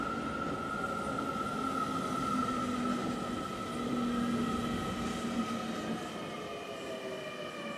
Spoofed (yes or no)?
no